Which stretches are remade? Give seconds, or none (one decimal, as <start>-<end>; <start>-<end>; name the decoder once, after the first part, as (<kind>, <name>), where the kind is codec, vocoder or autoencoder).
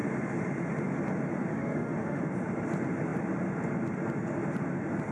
1.5-2.2 (autoencoder, DAC-VAE)